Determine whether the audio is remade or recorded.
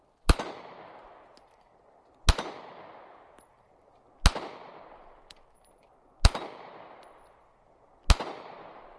recorded